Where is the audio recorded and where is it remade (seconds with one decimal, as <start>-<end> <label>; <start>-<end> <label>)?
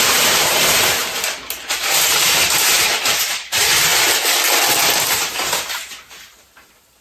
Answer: 0.0-1.0 remade; 1.0-1.6 recorded; 1.6-3.9 remade; 3.9-4.8 recorded; 4.8-7.0 remade